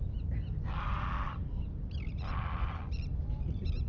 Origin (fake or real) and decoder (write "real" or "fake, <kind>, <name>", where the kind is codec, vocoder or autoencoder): real